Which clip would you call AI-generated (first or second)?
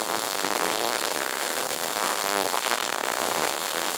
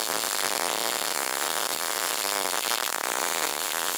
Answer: first